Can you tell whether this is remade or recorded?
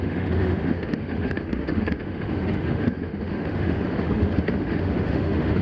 remade